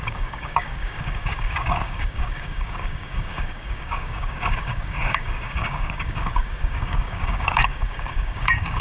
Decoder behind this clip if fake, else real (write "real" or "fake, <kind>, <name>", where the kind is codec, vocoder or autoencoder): fake, codec, DAC